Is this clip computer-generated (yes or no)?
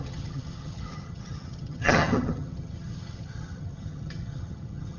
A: yes